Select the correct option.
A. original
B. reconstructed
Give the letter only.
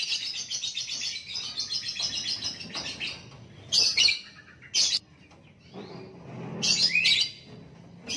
A